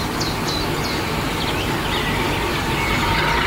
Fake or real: real